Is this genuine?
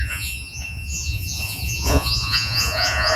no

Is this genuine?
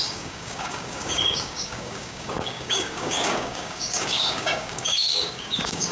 no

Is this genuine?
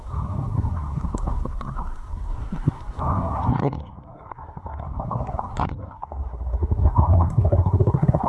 no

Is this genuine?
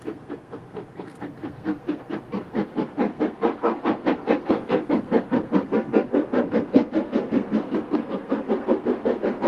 no